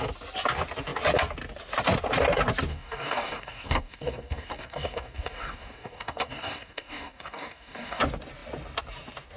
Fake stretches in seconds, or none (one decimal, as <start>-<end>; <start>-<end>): 2.7-8.0

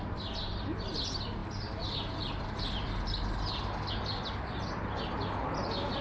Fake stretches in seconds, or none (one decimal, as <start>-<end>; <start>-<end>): none

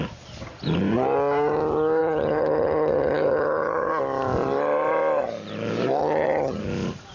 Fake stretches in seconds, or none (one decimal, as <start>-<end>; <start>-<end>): 2.0-3.9; 6.0-6.6

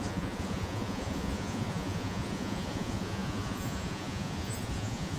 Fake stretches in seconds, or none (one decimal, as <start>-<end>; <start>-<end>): 0.0-5.2

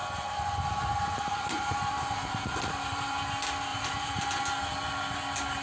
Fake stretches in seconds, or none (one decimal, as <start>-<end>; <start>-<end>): 0.0-3.2; 3.7-4.2

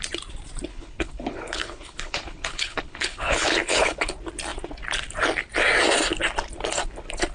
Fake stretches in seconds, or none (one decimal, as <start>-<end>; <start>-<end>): 0.7-4.1